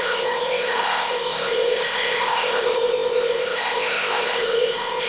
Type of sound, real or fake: fake